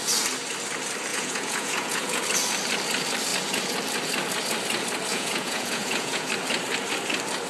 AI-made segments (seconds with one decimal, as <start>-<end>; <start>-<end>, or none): 1.1-2.2; 5.1-6.3

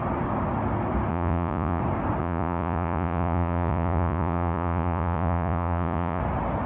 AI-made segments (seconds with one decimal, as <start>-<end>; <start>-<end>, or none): 1.1-1.8; 2.2-6.2

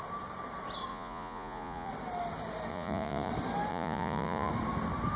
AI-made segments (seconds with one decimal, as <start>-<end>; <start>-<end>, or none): 0.9-1.9; 2.7-3.3; 3.7-4.5

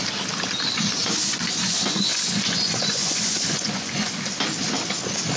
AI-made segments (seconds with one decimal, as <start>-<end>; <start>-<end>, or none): 1.0-4.2

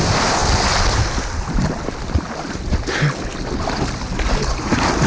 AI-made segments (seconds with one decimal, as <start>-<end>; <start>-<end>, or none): none

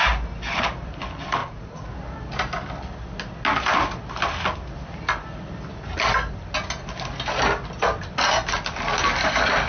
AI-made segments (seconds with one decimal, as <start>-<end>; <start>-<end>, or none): 1.4-1.9